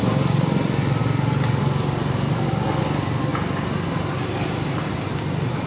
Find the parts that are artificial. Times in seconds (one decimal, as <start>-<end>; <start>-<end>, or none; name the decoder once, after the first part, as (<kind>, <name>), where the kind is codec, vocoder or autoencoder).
none